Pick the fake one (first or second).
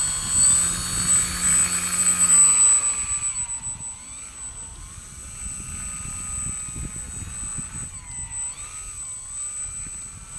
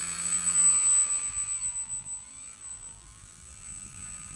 second